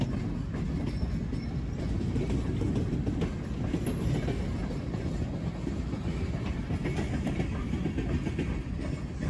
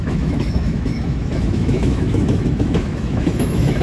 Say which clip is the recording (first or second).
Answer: first